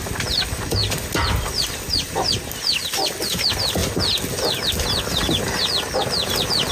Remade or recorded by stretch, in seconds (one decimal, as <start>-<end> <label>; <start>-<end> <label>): 0.0-6.7 recorded

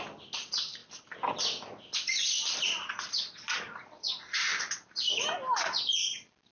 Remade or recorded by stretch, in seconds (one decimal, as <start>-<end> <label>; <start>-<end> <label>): 0.0-6.5 recorded

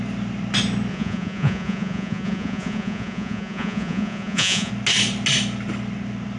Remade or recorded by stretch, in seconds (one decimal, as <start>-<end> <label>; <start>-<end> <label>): 0.0-0.9 recorded; 0.9-4.7 remade; 4.7-6.4 recorded

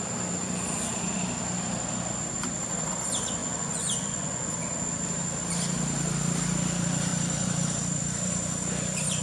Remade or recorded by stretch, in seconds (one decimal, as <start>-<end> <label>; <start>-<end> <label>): 0.0-3.4 recorded; 3.4-4.6 remade; 4.6-9.2 recorded

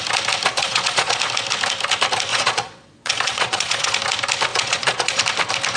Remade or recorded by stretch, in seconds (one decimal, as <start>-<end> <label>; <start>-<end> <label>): 0.0-0.5 recorded; 0.5-1.2 remade; 1.2-2.3 recorded; 2.3-4.0 remade; 4.0-4.5 recorded; 4.5-5.2 remade; 5.2-5.8 recorded

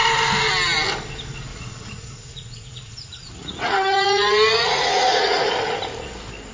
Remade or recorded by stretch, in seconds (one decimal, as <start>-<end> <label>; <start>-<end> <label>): 0.0-1.5 recorded; 1.5-5.4 remade; 5.4-6.5 recorded

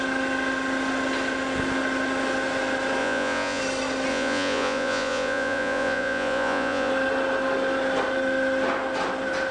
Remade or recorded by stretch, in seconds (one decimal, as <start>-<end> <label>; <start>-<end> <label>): 0.0-3.0 recorded; 3.0-3.6 remade; 3.6-4.1 recorded; 4.1-6.9 remade; 6.9-9.5 recorded

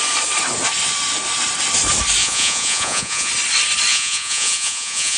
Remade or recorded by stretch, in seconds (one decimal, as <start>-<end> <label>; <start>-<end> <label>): 0.0-2.2 recorded; 2.2-3.3 remade; 3.3-3.9 recorded; 3.9-5.2 remade